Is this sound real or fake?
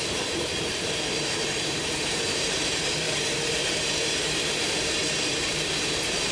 fake